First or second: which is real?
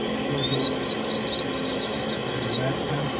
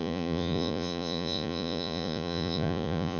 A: first